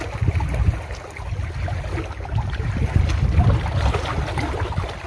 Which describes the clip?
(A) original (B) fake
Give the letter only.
A